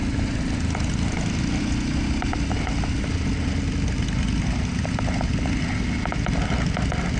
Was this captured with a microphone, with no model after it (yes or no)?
yes